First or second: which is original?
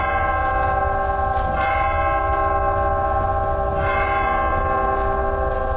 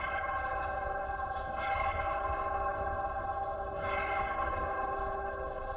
first